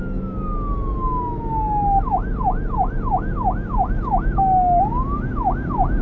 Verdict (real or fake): real